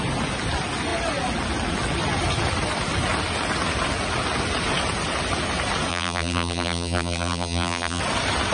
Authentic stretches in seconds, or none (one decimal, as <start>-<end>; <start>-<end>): 0.0-5.9; 8.0-8.5